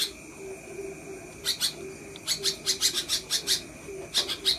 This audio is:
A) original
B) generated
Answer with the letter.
A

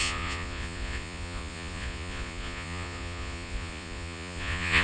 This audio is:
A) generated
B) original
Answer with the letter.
A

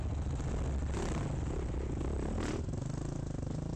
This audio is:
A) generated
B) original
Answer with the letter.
B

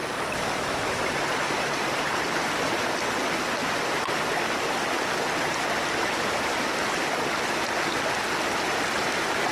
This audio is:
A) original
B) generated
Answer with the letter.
A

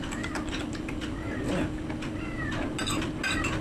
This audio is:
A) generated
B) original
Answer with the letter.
B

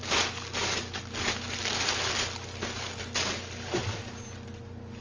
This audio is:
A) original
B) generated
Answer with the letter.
A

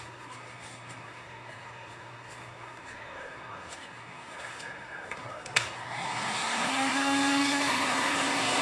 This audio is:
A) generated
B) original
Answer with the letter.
A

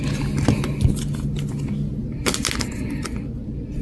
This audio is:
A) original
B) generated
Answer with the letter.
A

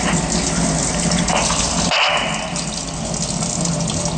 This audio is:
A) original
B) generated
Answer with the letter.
A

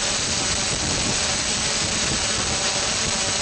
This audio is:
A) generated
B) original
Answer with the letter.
B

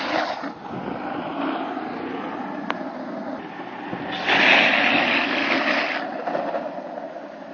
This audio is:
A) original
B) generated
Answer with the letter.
A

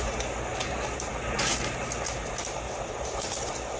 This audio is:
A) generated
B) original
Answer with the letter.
B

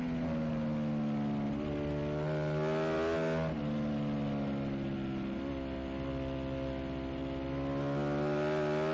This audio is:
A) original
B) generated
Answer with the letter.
A